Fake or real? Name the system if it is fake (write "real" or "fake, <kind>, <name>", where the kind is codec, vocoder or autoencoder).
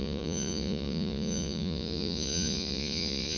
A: fake, vocoder, Vocos